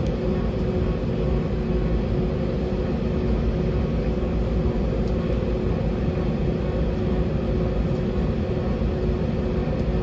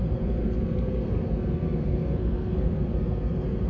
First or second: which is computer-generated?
second